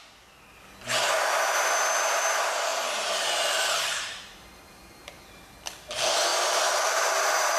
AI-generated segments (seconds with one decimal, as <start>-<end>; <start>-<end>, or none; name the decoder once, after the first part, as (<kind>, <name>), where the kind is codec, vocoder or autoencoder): 2.7-5.5 (vocoder, BigVGAN v2); 6.3-7.1